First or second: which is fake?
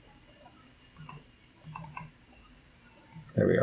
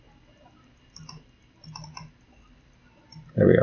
first